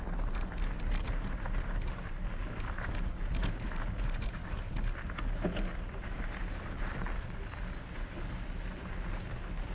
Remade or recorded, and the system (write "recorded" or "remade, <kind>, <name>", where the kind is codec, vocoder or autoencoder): recorded